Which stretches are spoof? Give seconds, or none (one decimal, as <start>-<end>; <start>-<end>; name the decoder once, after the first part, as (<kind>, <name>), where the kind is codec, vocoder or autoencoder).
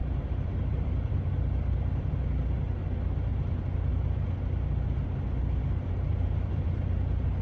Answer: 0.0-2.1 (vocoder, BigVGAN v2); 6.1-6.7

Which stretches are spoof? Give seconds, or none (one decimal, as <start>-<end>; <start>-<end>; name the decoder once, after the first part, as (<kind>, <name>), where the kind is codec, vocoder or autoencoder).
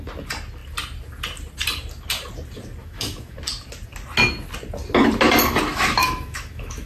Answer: 2.8-3.4 (autoencoder, DAC-VAE); 5.7-6.9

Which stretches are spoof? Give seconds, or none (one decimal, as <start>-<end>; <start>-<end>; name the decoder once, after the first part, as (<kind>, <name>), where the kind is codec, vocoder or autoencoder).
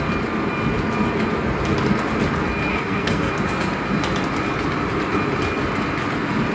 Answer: 2.7-3.3 (codec, SNAC)